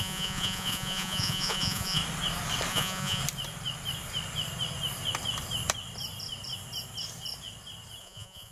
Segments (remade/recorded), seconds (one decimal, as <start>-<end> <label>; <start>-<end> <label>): 0.0-2.0 remade; 2.0-2.7 recorded; 2.7-3.2 remade; 3.2-8.0 recorded; 8.0-8.5 remade